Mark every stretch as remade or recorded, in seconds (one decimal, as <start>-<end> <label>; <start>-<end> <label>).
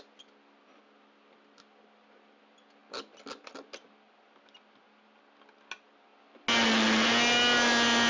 0.0-8.1 recorded